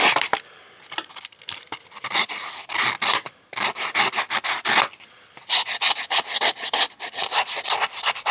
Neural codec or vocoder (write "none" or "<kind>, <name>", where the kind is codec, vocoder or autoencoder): vocoder, BigVGAN v2